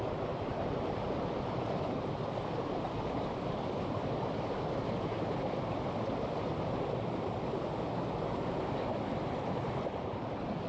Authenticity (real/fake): fake